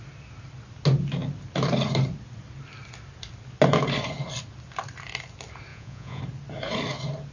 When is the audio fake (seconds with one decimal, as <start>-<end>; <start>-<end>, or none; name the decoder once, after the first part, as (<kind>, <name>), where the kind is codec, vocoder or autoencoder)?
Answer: 5.7-6.2 (vocoder, Vocos)